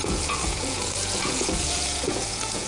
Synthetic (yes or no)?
yes